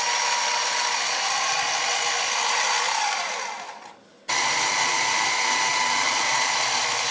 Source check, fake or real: real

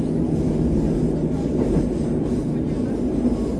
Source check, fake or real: real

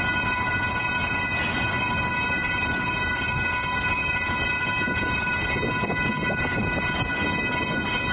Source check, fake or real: real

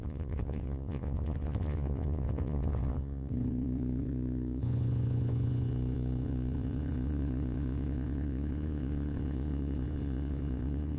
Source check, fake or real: fake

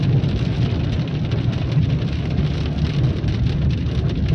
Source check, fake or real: real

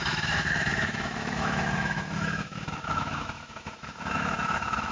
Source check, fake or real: fake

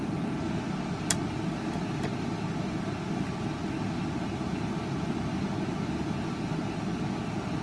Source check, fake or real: real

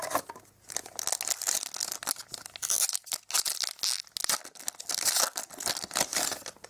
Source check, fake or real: real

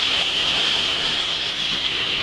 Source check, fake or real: fake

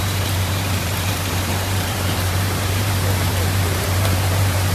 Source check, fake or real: fake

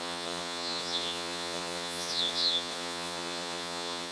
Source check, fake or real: fake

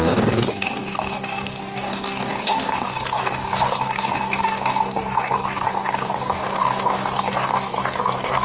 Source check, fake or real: fake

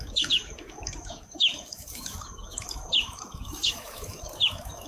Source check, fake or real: fake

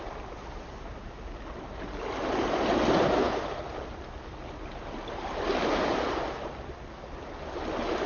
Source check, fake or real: real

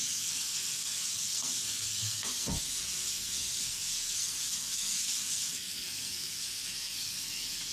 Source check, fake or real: fake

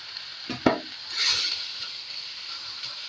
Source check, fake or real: real